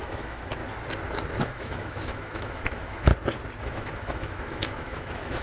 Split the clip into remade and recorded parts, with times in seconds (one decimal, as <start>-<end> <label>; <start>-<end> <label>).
0.0-0.6 remade; 0.6-1.4 recorded; 1.4-3.1 remade; 3.1-3.6 recorded; 3.6-5.4 remade